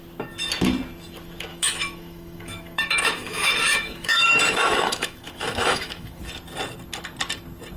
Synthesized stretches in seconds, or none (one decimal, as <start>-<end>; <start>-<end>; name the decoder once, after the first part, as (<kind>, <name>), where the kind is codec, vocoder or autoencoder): 1.5-6.2 (autoencoder, DAC-VAE)